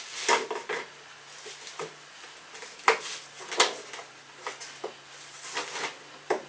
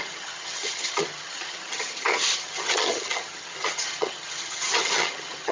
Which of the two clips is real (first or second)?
first